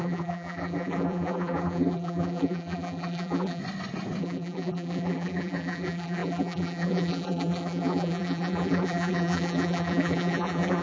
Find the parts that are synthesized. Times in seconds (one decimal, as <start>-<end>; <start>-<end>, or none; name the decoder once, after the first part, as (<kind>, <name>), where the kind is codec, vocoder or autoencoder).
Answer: 0.0-3.6 (vocoder, BigVGAN v2); 4.2-10.8